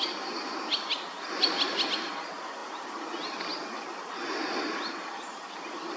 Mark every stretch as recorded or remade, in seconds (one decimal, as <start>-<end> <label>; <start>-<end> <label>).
0.0-6.0 recorded